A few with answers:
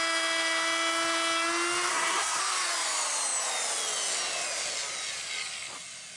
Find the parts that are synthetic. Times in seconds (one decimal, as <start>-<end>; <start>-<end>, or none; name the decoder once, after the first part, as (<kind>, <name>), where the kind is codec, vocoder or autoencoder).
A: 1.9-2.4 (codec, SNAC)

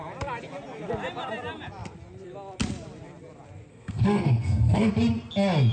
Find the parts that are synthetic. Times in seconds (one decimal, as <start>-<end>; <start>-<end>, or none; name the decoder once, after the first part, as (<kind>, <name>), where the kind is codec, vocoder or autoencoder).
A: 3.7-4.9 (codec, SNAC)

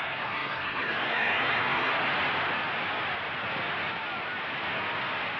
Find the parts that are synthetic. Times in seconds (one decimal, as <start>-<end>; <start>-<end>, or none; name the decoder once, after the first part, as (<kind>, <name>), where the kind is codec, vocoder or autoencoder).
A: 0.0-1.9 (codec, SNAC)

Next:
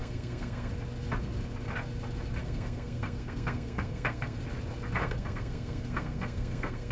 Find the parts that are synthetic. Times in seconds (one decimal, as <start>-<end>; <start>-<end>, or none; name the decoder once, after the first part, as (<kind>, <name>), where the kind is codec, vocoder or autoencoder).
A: 0.0-0.7 (codec, SNAC); 2.4-4.4; 5.0-6.9

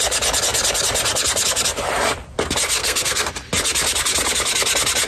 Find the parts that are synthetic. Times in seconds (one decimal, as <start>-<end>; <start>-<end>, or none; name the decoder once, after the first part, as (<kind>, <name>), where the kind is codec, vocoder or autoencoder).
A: 2.8-3.3 (codec, SNAC)

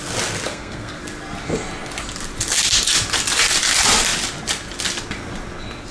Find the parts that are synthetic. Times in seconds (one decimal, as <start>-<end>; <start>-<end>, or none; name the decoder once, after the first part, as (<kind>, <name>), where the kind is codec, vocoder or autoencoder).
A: 0.5-1.0 (codec, SNAC)